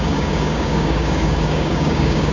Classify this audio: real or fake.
fake